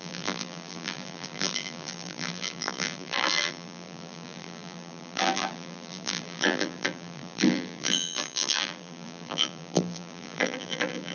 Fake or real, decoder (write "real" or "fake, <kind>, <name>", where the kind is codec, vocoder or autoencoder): fake, vocoder, BigVGAN v2